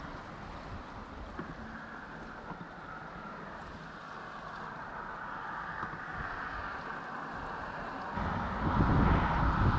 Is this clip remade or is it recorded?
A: recorded